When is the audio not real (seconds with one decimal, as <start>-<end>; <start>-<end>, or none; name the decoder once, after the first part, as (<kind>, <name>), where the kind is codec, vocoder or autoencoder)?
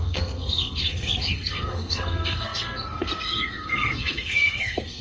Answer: 0.0-5.0 (codec, SNAC)